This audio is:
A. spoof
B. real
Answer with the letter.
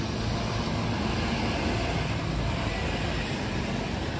B